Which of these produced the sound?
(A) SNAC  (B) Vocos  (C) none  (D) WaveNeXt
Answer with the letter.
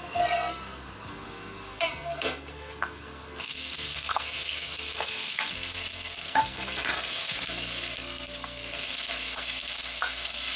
A